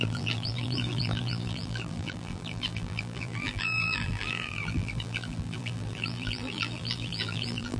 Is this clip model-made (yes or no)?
yes